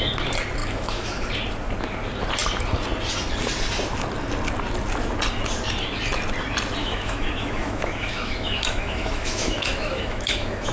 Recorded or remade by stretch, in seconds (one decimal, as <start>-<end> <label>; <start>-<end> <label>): 0.0-0.6 recorded; 0.6-1.3 remade; 1.3-6.8 recorded; 6.8-10.7 remade